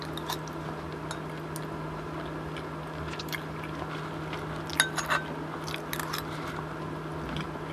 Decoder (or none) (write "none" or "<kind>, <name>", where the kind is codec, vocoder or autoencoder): none